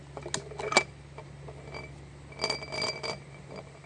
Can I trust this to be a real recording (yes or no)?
yes